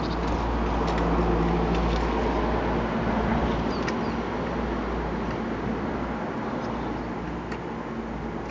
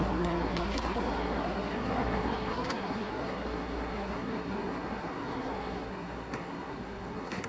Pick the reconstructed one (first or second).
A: second